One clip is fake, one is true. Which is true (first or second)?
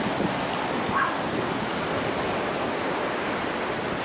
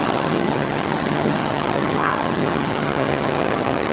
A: first